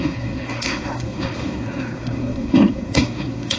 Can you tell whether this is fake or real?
fake